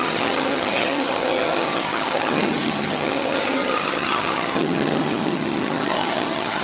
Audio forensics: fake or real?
fake